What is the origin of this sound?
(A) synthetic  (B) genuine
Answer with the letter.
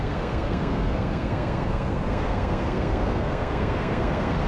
A